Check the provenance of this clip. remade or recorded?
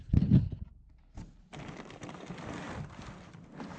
recorded